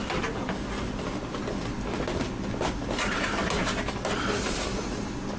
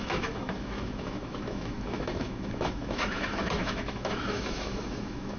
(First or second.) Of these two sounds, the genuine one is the first